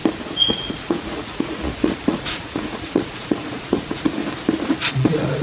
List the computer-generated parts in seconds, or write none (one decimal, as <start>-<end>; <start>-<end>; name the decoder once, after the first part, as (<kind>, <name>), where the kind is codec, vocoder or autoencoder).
0.5-4.2 (vocoder, Vocos); 4.9-5.4